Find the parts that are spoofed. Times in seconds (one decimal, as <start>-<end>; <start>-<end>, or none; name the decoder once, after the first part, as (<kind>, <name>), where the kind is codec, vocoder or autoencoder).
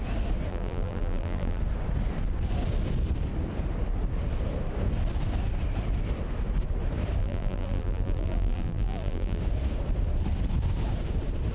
0.5-1.6 (vocoder, BigVGAN v2); 7.2-9.4